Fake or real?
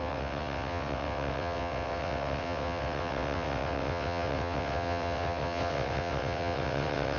fake